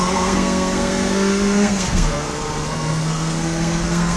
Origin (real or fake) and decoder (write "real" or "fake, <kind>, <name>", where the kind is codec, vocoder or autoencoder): fake, codec, SNAC